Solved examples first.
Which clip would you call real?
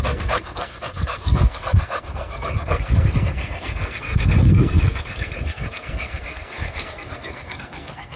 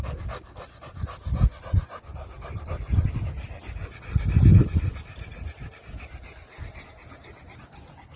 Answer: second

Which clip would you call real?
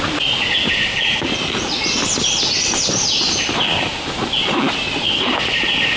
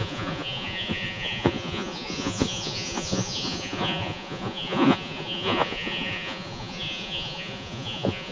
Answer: first